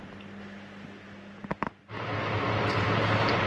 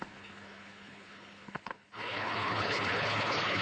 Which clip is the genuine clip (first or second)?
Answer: first